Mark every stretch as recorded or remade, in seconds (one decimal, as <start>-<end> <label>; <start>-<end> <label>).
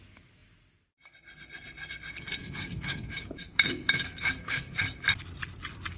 0.0-2.4 recorded; 2.4-4.8 remade; 4.8-6.0 recorded